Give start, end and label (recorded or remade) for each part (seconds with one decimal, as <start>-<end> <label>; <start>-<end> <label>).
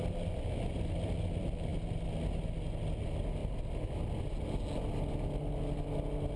0.0-6.4 recorded